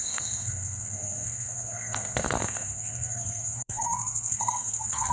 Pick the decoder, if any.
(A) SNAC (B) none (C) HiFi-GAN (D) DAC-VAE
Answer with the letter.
A